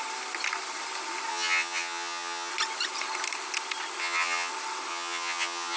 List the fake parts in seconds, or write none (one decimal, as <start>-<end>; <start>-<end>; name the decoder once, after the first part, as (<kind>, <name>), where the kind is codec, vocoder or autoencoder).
1.3-2.5 (vocoder, HiFi-GAN); 4.0-4.5; 4.9-5.8

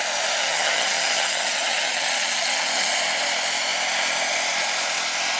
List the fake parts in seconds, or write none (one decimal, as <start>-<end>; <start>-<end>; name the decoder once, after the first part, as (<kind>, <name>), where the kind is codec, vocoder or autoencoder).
0.4-2.9 (vocoder, HiFi-GAN)

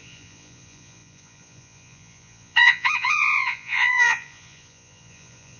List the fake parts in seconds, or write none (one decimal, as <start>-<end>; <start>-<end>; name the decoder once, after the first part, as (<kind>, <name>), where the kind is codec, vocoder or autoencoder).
0.0-5.6 (vocoder, Vocos)

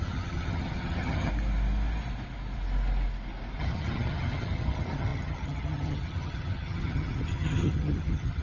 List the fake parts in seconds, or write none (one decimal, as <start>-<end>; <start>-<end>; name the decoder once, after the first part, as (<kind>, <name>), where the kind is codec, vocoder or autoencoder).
0.0-1.3 (vocoder, HiFi-GAN); 3.6-8.4

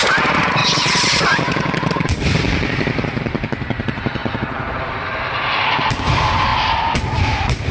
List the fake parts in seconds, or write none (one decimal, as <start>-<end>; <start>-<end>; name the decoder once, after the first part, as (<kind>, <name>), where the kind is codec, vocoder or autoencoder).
0.0-0.6 (vocoder, BigVGAN v2); 1.9-7.7

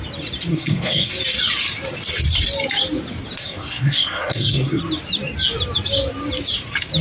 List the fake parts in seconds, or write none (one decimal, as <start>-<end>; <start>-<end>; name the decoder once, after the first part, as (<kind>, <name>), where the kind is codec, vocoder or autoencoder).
0.5-1.1 (codec, SNAC); 3.4-4.8

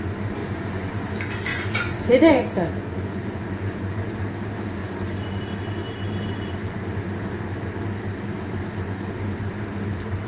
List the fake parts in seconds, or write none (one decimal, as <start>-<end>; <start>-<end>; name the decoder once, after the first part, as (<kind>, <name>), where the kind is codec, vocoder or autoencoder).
0.4-0.9 (vocoder, Vocos); 1.5-4.2; 4.8-5.4